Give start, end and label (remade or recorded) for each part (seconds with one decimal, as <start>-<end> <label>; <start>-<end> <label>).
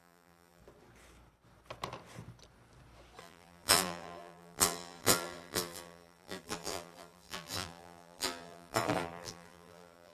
0.0-0.6 remade; 0.6-3.2 recorded; 3.2-10.1 remade